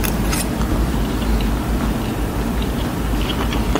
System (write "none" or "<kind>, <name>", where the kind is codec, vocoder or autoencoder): none